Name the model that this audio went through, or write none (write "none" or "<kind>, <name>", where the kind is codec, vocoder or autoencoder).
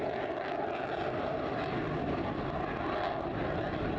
none